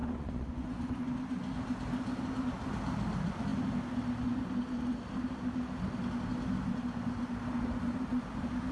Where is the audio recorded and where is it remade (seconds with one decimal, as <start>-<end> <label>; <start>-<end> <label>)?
0.0-1.1 remade; 1.1-8.7 recorded

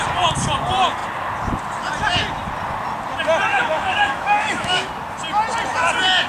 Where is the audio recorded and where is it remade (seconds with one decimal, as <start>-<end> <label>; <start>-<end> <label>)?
0.0-3.5 recorded; 3.5-4.9 remade; 4.9-6.3 recorded

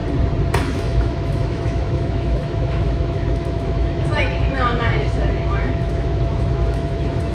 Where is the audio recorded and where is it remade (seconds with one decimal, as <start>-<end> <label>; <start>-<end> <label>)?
0.0-0.6 recorded; 0.6-7.3 remade

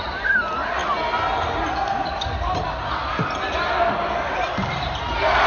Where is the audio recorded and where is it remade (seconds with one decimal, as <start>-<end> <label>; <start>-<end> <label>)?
0.0-5.5 recorded